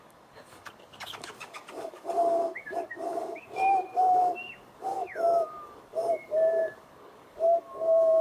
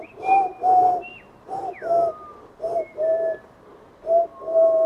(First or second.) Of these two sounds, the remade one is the first